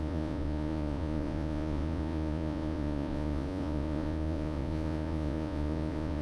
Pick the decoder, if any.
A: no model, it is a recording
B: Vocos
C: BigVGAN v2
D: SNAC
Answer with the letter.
B